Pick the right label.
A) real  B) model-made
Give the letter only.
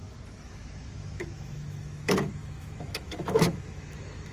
B